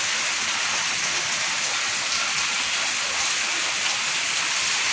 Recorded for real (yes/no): yes